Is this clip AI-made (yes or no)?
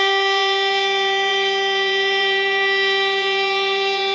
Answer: yes